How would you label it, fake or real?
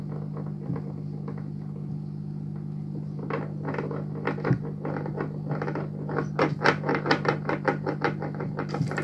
real